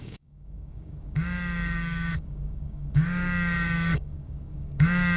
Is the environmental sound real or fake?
fake